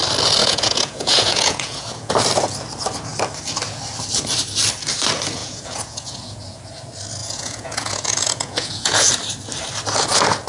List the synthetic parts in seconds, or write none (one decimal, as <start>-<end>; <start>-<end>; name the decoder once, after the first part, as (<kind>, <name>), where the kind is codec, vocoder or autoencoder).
0.4-2.1 (vocoder, Vocos); 5.4-6.4; 7.2-9.1